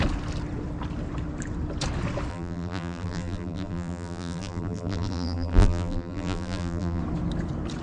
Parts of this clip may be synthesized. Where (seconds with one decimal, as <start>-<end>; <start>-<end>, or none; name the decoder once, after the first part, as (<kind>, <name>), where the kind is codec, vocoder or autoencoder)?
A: 2.3-7.0 (vocoder, BigVGAN v2)